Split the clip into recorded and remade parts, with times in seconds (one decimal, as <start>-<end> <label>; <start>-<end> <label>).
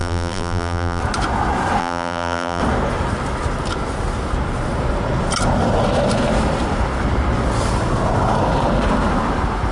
0.0-1.0 remade; 1.0-1.8 recorded; 1.8-2.6 remade; 2.6-9.7 recorded